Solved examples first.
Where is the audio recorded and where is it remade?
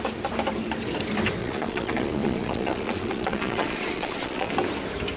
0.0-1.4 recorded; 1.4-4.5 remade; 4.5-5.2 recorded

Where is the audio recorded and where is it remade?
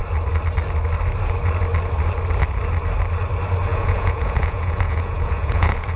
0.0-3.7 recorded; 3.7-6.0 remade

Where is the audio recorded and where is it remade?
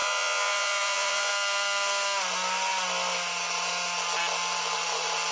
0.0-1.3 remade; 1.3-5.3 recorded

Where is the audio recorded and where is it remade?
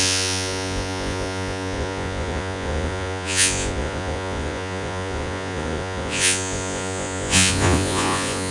0.0-8.5 remade